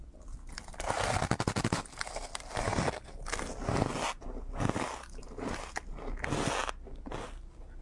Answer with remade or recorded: recorded